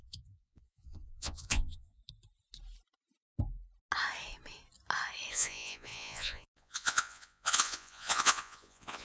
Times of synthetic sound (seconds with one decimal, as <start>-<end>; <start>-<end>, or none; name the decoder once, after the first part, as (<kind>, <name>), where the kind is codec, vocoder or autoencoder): 0.0-2.0 (vocoder, Vocos); 5.3-9.0